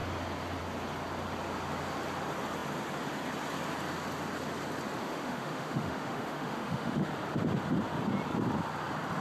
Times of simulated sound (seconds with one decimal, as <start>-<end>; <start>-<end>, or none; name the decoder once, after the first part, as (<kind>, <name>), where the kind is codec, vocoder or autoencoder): 5.0-7.1 (autoencoder, DAC-VAE)